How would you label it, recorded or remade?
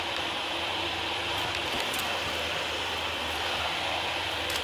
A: recorded